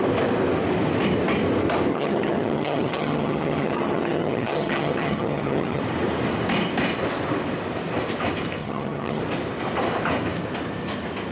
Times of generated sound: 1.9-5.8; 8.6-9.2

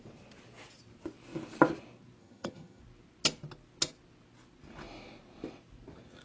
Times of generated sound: 2.2-2.8

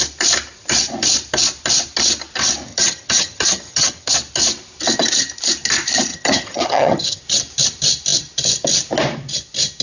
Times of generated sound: 2.7-4.1; 6.1-7.2

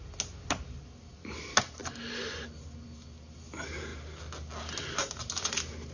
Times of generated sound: none

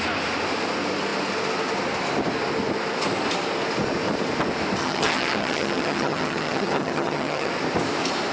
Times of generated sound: 4.8-7.5

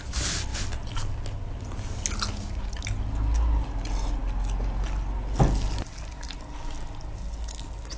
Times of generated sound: none

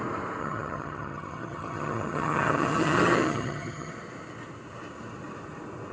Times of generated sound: 0.4-3.9